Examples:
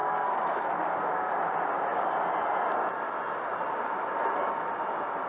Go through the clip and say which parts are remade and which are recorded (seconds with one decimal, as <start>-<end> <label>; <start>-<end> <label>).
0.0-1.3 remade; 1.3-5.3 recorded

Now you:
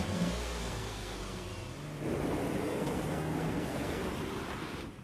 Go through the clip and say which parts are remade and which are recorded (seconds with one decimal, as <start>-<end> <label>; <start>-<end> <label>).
0.0-1.5 remade; 1.5-2.6 recorded; 2.6-4.0 remade; 4.0-5.0 recorded

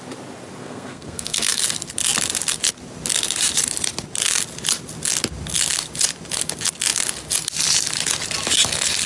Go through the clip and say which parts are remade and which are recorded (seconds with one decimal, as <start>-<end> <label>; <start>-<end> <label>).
0.0-0.6 recorded; 0.6-1.6 remade; 1.6-9.1 recorded

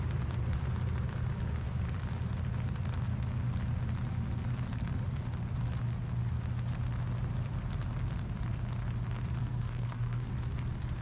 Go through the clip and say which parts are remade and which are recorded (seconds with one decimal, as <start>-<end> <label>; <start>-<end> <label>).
0.0-9.4 recorded; 9.4-10.3 remade; 10.3-11.0 recorded

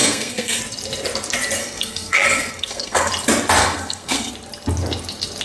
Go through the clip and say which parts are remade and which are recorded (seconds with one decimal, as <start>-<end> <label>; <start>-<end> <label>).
0.0-0.6 remade; 0.6-1.6 recorded; 1.6-3.1 remade; 3.1-3.6 recorded; 3.6-4.3 remade; 4.3-5.4 recorded

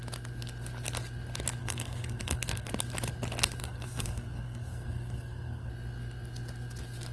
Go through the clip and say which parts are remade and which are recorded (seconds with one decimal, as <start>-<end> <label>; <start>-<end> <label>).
0.0-1.6 recorded; 1.6-2.7 remade; 2.7-3.6 recorded; 3.6-5.7 remade; 5.7-7.1 recorded